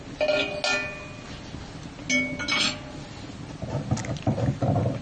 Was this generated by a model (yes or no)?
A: no